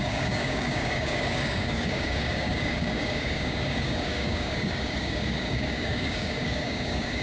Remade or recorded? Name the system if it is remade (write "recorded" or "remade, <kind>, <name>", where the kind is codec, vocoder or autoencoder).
remade, codec, DAC